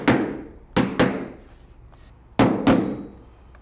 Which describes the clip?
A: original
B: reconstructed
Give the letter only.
A